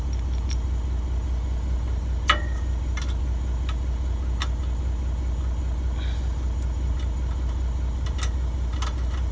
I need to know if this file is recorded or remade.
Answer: recorded